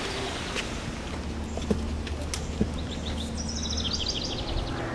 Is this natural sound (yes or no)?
yes